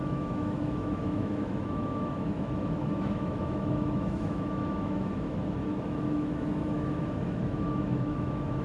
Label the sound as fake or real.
fake